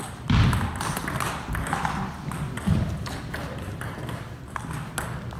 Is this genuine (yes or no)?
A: yes